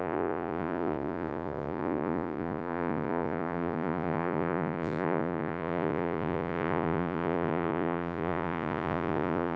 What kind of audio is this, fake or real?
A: fake